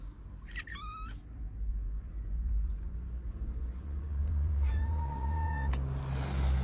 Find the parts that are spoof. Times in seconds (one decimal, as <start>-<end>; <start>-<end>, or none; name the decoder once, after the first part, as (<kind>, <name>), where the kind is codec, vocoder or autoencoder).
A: 1.7-5.7 (vocoder, Vocos)